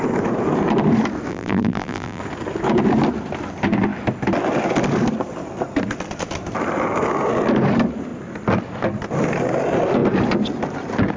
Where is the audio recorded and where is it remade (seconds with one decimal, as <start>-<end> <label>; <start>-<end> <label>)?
0.0-1.3 recorded; 1.3-2.2 remade; 2.2-11.2 recorded